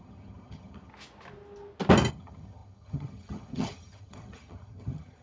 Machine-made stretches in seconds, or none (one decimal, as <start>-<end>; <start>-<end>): 0.0-0.9; 2.1-5.2